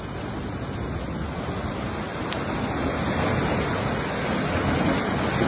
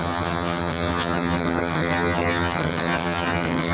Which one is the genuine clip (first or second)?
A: first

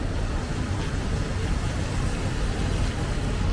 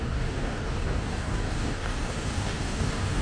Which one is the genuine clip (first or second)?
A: first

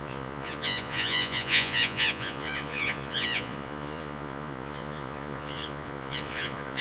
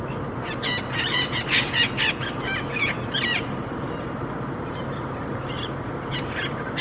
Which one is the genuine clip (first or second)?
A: second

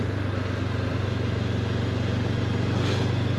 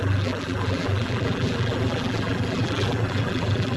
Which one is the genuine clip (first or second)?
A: first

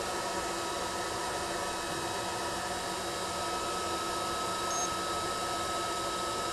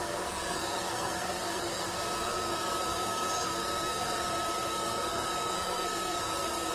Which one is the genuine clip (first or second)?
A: first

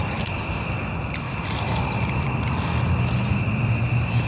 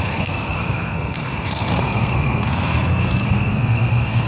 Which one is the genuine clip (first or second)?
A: first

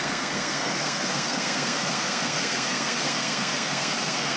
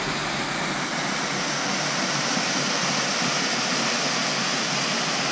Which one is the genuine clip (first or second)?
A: second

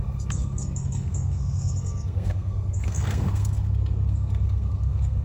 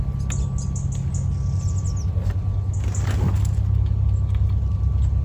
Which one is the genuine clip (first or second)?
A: second